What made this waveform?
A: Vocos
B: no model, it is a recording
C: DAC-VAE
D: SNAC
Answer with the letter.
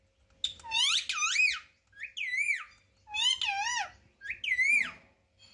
B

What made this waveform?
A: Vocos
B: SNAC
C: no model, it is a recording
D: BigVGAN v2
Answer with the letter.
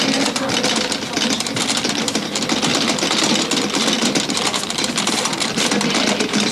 C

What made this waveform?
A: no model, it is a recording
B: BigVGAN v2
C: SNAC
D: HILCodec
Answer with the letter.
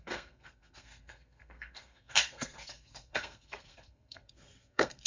C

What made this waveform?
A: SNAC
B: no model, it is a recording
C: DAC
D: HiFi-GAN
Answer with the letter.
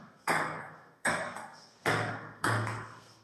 A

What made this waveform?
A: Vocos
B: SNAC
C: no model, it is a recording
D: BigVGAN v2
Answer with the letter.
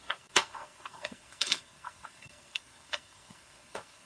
B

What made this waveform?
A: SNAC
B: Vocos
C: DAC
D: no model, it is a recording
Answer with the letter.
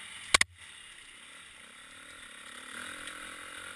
D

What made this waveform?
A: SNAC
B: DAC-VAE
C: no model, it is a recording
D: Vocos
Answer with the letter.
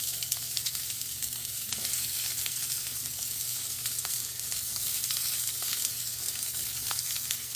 A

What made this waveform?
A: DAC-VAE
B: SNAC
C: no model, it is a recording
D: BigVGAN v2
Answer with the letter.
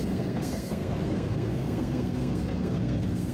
B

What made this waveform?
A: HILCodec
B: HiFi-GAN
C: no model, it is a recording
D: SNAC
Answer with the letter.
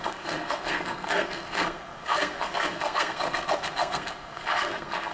D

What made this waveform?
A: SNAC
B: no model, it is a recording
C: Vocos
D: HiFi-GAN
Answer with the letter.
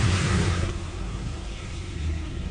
A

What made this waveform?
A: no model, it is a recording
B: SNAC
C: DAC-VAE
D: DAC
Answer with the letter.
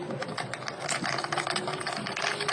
A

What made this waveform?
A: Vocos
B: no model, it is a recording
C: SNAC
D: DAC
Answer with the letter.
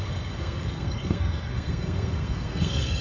C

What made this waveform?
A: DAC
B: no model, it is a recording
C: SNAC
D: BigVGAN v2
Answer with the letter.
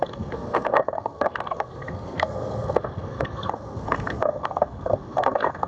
C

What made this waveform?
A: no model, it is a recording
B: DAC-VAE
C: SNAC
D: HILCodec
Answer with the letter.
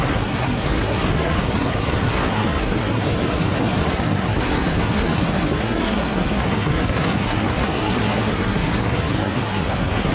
C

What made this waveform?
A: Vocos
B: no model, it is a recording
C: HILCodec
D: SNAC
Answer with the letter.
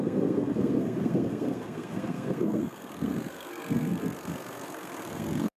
D